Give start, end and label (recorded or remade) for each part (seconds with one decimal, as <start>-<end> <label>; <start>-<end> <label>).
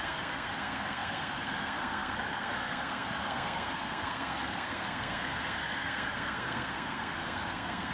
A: 0.0-7.9 remade